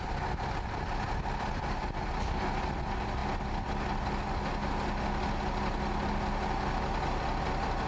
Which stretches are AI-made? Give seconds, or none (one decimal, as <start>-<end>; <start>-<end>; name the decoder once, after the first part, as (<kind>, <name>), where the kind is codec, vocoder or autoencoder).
none